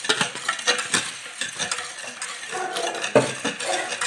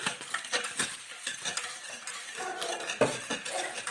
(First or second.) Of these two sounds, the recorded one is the first